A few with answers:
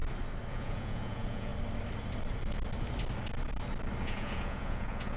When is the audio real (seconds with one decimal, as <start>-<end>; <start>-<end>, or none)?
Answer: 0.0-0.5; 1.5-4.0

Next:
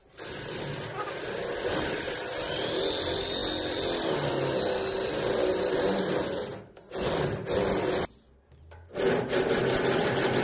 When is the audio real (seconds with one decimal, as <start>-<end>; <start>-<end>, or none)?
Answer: 0.0-10.4

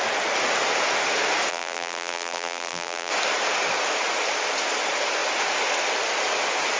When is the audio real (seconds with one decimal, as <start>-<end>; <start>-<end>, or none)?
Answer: 0.0-1.5; 3.1-6.8

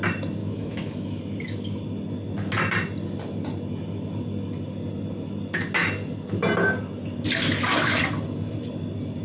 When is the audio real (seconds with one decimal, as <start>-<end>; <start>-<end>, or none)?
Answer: 0.0-0.4; 1.2-9.2